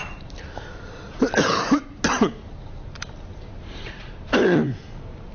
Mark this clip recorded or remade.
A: remade